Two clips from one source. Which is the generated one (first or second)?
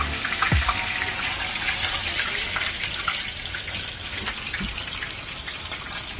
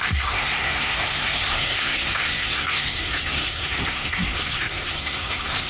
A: second